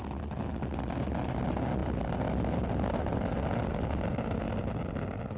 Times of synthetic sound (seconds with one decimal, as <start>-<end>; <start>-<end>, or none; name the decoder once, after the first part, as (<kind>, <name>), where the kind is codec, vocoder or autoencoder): none